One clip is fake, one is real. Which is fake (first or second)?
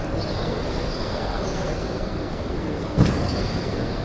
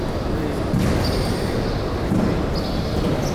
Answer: first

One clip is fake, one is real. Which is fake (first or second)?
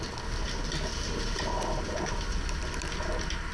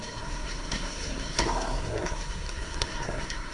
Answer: second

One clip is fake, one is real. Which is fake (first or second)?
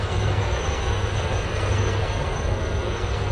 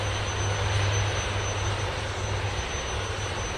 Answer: first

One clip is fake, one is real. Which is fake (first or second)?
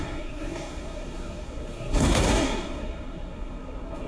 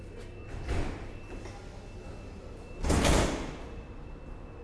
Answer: first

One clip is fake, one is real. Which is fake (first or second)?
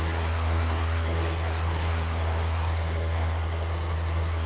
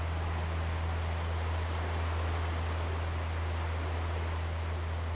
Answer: first